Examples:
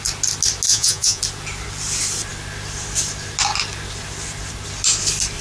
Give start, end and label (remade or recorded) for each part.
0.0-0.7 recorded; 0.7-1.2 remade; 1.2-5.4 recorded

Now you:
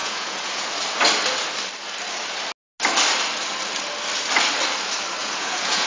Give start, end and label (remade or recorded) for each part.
0.0-0.7 remade; 0.7-5.2 recorded; 5.2-5.9 remade

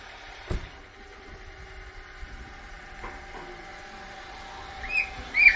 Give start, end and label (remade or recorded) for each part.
0.0-3.7 recorded; 3.7-4.4 remade; 4.4-5.6 recorded

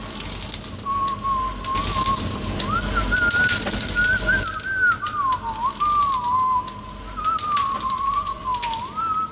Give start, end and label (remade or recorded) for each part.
0.0-7.6 recorded; 7.6-8.4 remade; 8.4-9.3 recorded